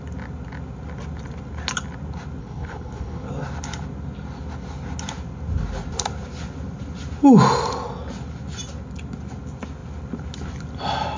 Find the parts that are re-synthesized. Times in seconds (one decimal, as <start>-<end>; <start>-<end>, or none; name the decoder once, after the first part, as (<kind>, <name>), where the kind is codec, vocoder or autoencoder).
2.4-3.3 (codec, HILCodec)